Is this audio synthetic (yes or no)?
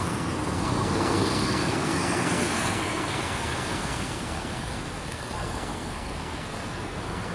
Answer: yes